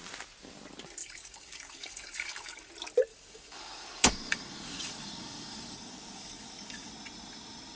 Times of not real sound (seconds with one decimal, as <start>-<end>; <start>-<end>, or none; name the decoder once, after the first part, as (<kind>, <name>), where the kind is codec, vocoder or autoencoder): 1.0-2.7 (codec, DAC); 3.1-6.9